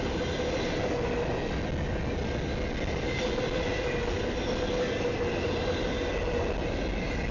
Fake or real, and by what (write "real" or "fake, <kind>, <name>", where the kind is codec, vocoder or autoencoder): real